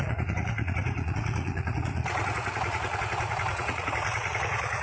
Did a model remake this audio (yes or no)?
yes